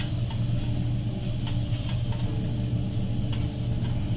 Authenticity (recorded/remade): recorded